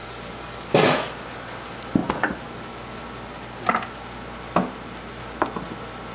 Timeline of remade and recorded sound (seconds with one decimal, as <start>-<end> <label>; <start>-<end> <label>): 0.0-0.7 remade; 0.7-6.1 recorded